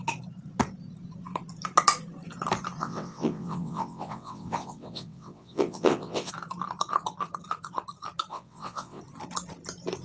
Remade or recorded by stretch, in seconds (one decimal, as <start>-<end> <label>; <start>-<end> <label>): 0.0-2.8 recorded; 2.8-6.3 remade; 6.3-8.3 recorded; 8.3-9.0 remade; 9.0-10.0 recorded